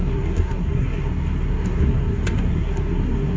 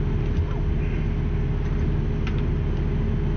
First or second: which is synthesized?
first